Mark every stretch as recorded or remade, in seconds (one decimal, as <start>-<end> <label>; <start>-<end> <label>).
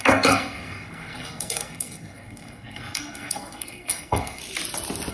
0.0-4.4 remade; 4.4-5.1 recorded